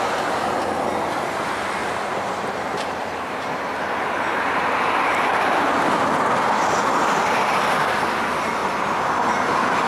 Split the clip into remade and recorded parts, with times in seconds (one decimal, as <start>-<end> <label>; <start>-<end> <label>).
0.0-1.8 recorded; 1.8-3.9 remade; 3.9-5.1 recorded; 5.1-5.7 remade; 5.7-8.6 recorded; 8.6-9.4 remade; 9.4-9.9 recorded